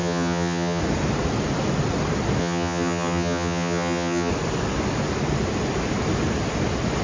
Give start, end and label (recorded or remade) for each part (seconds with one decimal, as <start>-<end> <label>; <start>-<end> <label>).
0.0-0.8 remade; 0.8-2.4 recorded; 2.4-4.3 remade; 4.3-7.0 recorded